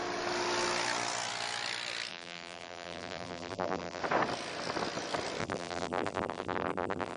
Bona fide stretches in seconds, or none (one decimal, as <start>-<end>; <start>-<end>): 0.0-2.1; 4.0-5.4